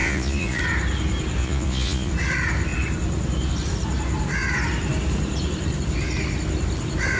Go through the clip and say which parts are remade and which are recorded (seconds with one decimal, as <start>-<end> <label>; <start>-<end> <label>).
0.0-0.6 remade; 0.6-1.4 recorded; 1.4-2.1 remade; 2.1-7.2 recorded